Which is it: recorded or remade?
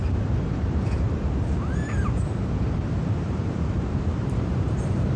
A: remade